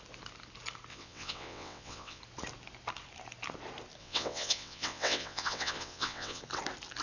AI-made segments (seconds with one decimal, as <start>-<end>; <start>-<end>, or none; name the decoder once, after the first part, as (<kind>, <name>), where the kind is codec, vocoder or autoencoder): 0.9-2.2 (vocoder, WaveNeXt); 4.0-6.4